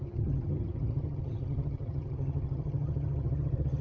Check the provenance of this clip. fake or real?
fake